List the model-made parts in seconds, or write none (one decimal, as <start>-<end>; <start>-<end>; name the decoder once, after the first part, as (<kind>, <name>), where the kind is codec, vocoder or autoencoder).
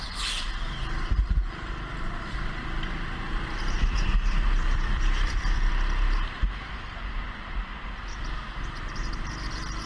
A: 1.9-5.7 (vocoder, BigVGAN v2); 8.1-9.0